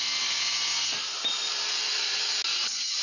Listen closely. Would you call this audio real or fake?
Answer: real